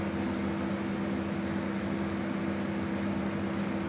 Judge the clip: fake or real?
real